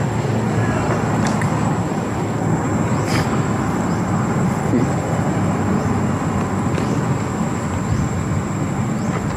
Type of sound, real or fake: real